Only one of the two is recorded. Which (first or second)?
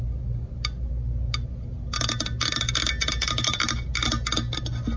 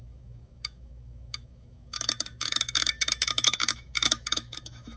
first